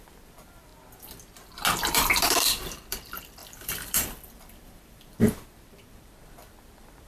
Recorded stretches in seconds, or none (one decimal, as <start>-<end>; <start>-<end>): 0.7-1.8